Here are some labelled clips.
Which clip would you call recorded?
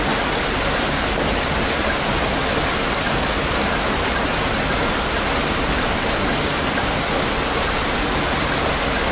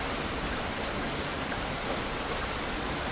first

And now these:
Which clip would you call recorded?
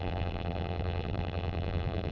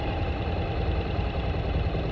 second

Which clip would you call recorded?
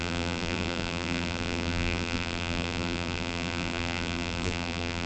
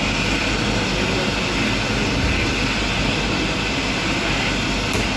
second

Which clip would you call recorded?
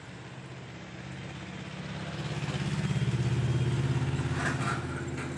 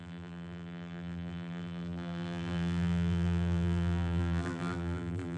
first